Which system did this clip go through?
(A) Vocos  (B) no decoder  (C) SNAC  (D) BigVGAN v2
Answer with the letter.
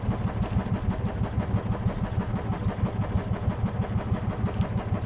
B